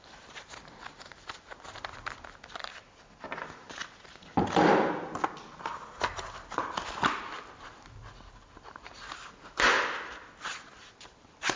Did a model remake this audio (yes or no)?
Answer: no